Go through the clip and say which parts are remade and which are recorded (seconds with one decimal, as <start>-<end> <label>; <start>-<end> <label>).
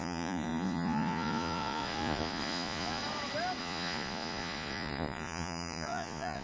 0.0-3.0 remade; 3.0-3.6 recorded; 3.6-6.4 remade